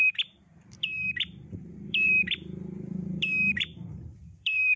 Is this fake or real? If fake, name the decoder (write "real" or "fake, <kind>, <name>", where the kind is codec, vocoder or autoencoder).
fake, vocoder, BigVGAN v2